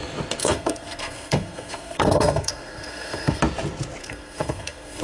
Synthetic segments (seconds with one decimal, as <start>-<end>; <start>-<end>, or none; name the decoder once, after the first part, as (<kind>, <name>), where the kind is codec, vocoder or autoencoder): 0.4-3.4 (codec, SNAC); 4.0-5.0